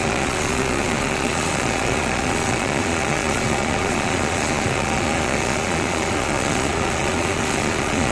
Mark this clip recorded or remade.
remade